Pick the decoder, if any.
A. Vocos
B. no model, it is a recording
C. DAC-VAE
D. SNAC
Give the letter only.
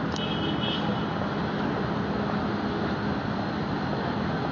B